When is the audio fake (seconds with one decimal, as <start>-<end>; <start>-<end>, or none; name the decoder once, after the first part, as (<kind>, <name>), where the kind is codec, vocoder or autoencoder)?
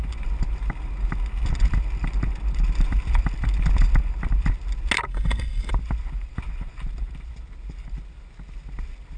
5.1-5.7 (codec, SNAC)